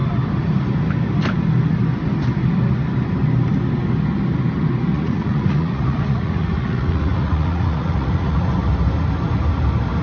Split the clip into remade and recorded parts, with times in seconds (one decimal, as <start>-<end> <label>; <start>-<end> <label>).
0.0-4.9 recorded; 4.9-8.5 remade; 8.5-10.0 recorded